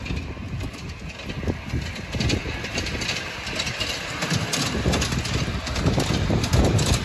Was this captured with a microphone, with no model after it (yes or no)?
yes